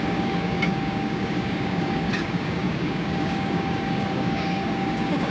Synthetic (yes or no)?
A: yes